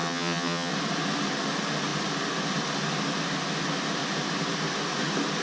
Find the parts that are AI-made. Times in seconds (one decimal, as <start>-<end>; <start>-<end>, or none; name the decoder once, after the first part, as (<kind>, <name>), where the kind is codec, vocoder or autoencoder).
0.0-0.7 (vocoder, HiFi-GAN)